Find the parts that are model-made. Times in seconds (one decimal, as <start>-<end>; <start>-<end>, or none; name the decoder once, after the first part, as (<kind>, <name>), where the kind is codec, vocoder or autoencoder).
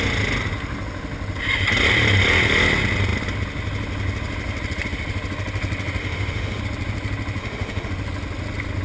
6.0-6.6 (autoencoder, DAC-VAE); 7.4-7.9